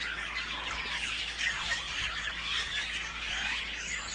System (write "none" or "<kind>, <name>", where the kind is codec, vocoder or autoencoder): codec, DAC